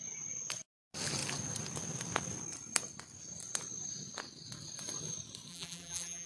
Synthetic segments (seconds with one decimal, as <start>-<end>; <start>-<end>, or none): 5.5-6.3